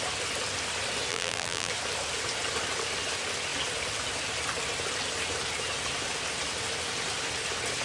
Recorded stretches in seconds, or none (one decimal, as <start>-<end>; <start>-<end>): 0.0-1.1; 1.7-7.8